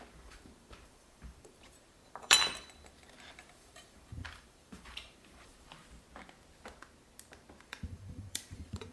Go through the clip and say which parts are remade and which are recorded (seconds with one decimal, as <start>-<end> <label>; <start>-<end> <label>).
0.0-5.8 remade; 5.8-7.6 recorded; 7.6-8.9 remade

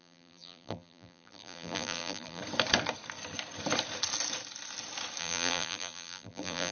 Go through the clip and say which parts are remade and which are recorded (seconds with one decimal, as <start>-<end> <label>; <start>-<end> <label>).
0.0-2.4 remade; 2.4-5.2 recorded; 5.2-6.7 remade

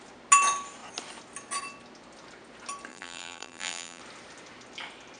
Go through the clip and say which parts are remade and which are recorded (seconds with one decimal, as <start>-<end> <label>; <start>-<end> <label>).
0.0-2.9 recorded; 2.9-4.0 remade; 4.0-5.2 recorded

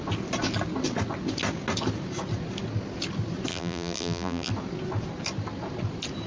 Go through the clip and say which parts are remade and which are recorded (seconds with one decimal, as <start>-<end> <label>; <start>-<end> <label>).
0.0-3.5 recorded; 3.5-4.5 remade; 4.5-6.3 recorded

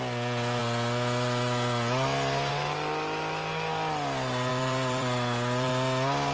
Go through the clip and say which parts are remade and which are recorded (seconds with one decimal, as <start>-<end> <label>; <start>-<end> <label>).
0.0-4.5 recorded; 4.5-5.7 remade; 5.7-6.3 recorded

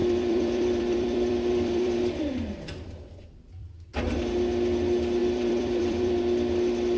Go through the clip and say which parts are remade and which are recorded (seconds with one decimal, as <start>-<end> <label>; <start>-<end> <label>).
0.0-4.2 remade; 4.2-5.2 recorded; 5.2-6.2 remade; 6.2-7.0 recorded

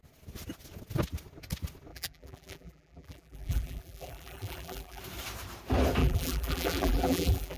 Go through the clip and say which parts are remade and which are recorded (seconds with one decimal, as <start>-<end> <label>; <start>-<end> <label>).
0.0-1.9 recorded; 1.9-5.0 remade; 5.0-6.0 recorded; 6.0-7.6 remade

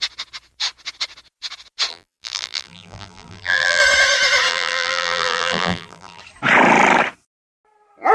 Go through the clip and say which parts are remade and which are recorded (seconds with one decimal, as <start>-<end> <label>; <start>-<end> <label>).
0.0-1.9 recorded; 1.9-3.8 remade; 3.8-4.5 recorded; 4.5-6.2 remade; 6.2-8.1 recorded